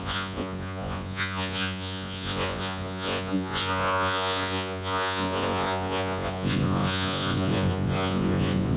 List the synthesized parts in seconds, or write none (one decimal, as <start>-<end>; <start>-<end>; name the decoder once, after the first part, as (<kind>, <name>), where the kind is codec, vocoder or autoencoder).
0.0-8.8 (vocoder, Vocos)